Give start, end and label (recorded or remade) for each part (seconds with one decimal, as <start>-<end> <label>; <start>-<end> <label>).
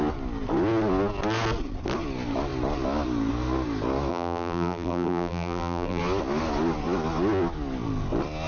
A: 0.0-4.1 recorded; 4.1-6.0 remade; 6.0-8.5 recorded